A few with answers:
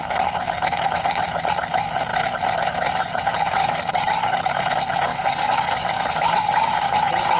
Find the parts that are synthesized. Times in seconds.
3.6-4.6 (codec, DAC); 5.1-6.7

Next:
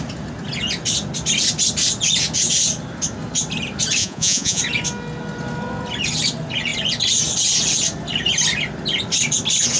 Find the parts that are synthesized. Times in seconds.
4.0-4.6 (vocoder, Vocos)

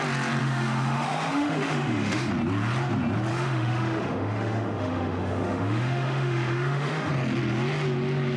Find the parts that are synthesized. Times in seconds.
0.4-2.3 (autoencoder, DAC-VAE); 3.3-7.1

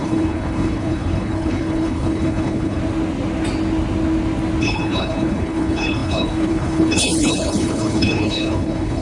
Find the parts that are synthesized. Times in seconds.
0.0-2.8 (codec, HILCodec); 4.6-9.0

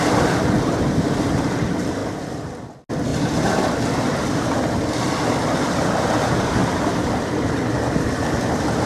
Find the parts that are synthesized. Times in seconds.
3.1-5.1 (vocoder, BigVGAN v2); 6.6-8.9

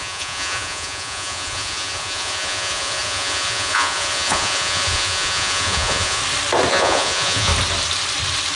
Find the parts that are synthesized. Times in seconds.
0.0-6.2 (vocoder, Vocos); 6.7-7.5

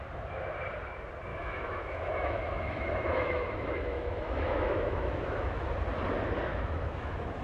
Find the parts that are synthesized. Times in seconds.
1.3-5.7 (autoencoder, DAC-VAE); 6.5-7.4

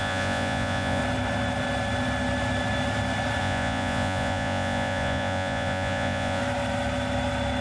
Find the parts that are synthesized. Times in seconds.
0.0-1.0 (vocoder, Vocos); 3.4-6.4